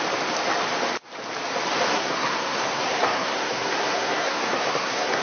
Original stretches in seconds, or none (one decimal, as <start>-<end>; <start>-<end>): 0.0-1.9